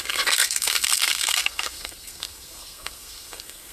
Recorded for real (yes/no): no